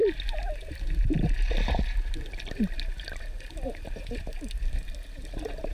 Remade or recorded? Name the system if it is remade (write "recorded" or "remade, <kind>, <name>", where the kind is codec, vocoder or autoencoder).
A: recorded